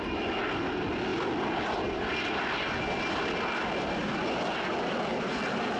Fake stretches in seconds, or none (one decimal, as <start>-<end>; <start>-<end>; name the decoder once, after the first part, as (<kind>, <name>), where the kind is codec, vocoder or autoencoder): none